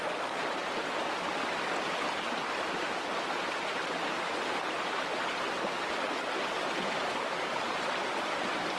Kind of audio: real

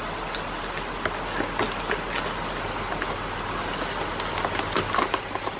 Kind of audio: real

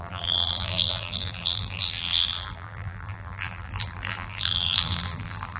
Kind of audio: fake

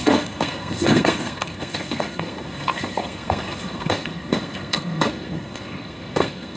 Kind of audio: fake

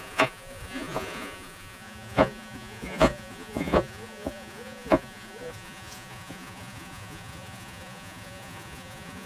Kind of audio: fake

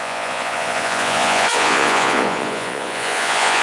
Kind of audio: fake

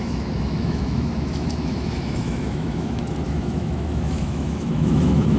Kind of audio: fake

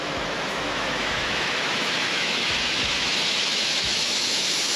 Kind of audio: fake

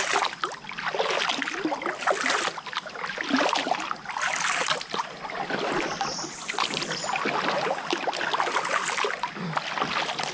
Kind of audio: real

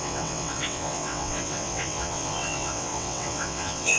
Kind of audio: fake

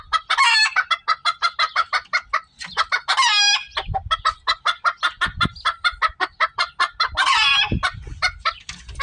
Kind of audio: real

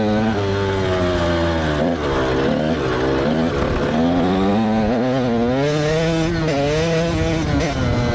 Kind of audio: real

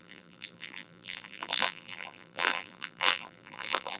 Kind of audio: fake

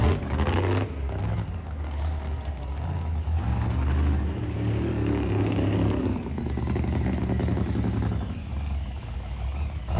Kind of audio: fake